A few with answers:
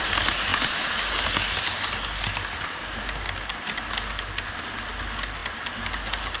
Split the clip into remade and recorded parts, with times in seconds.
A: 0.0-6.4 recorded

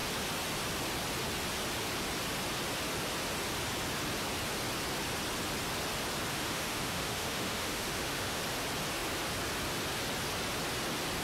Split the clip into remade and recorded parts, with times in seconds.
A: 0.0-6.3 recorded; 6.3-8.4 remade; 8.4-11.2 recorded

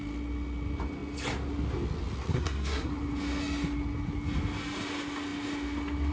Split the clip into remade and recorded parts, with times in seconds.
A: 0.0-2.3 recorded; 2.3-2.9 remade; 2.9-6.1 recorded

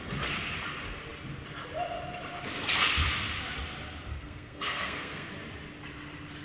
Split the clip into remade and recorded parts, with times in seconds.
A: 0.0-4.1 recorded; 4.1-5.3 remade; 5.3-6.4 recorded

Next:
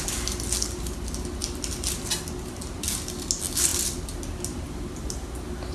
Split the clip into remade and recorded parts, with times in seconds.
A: 0.0-5.7 recorded

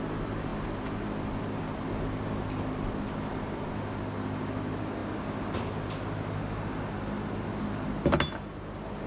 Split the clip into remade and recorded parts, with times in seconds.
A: 0.0-9.1 recorded